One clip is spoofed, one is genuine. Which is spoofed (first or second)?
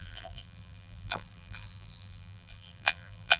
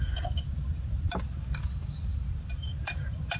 first